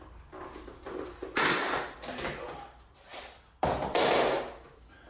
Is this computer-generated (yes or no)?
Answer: no